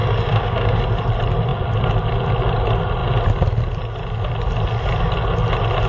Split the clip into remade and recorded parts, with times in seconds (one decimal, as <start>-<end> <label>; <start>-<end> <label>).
0.0-0.8 remade; 0.8-5.9 recorded